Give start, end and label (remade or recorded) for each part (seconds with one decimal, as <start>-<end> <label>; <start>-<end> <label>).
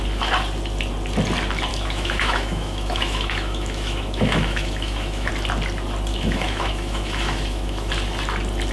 0.0-1.7 recorded; 1.7-5.3 remade; 5.3-6.1 recorded; 6.1-7.9 remade; 7.9-8.7 recorded